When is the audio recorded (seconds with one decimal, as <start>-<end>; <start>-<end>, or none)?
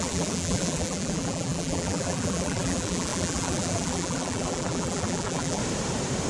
5.6-6.3